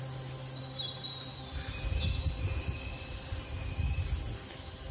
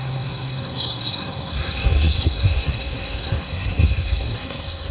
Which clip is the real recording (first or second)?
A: first